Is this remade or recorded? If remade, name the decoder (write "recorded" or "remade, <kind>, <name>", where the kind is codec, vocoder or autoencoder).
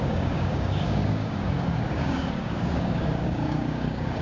remade, codec, DAC